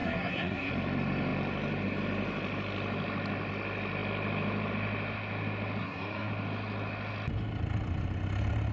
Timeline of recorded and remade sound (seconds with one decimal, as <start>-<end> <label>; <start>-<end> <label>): 0.0-0.7 remade; 0.7-5.8 recorded; 5.8-6.3 remade; 6.3-8.7 recorded